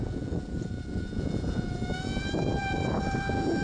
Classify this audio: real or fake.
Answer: fake